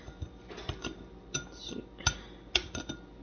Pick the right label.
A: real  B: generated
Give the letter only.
A